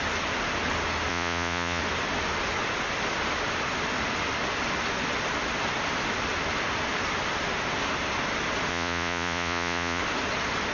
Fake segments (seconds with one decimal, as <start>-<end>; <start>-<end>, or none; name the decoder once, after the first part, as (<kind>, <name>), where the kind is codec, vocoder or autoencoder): 1.1-1.8 (vocoder, Vocos); 8.7-10.0